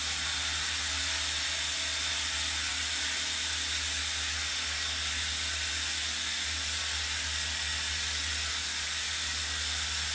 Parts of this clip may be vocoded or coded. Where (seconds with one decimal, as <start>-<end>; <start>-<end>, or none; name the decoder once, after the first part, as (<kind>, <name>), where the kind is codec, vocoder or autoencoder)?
none